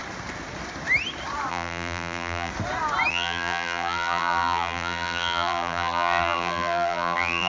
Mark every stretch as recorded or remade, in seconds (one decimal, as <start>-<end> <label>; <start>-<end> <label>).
0.0-1.5 recorded; 1.5-2.5 remade; 2.5-3.1 recorded; 3.1-7.5 remade